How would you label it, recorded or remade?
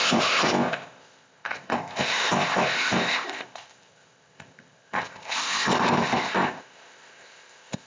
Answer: remade